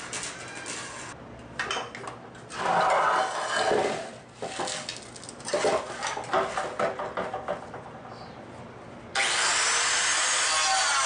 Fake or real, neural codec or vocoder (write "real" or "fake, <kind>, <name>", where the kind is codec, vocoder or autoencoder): real